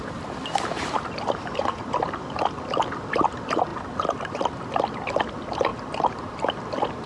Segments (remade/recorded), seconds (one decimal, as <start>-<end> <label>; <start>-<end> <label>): 0.0-3.7 recorded; 3.7-4.7 remade; 4.7-5.7 recorded; 5.7-6.5 remade; 6.5-7.1 recorded